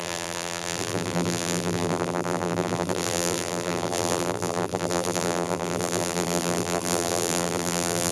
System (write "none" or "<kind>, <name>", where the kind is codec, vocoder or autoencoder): vocoder, BigVGAN v2